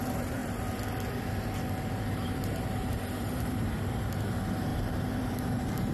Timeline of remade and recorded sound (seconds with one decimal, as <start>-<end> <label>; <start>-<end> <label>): 0.0-0.4 remade; 0.4-1.8 recorded; 1.8-4.7 remade; 4.7-5.3 recorded; 5.3-5.9 remade